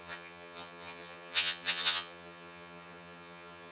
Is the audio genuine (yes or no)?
no